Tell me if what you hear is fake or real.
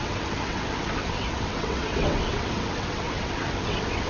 fake